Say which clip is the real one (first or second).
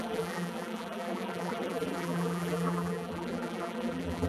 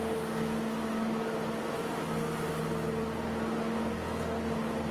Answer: second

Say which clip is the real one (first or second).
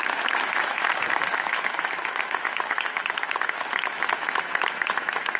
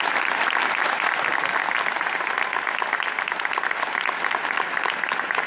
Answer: second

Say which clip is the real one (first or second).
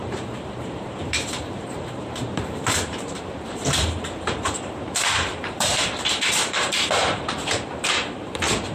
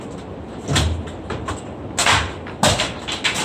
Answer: second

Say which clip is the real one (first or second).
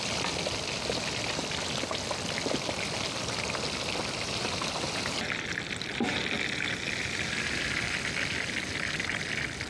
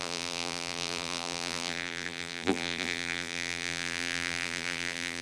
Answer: first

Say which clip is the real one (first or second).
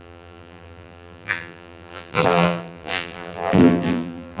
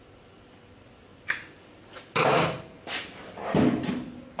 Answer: second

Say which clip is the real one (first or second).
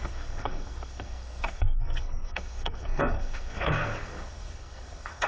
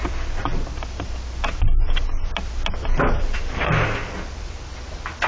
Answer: second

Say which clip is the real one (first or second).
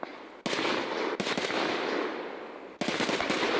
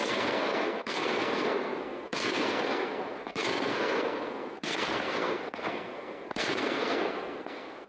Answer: first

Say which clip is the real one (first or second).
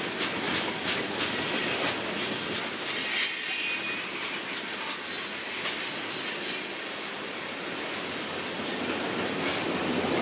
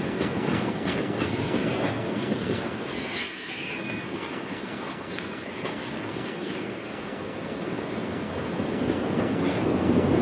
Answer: first